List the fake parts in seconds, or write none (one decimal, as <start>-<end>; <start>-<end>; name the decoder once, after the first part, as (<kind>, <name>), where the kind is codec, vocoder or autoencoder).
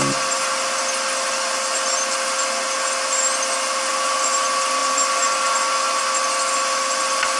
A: none